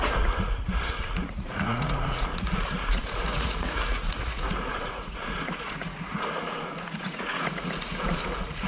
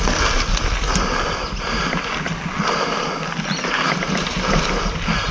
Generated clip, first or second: first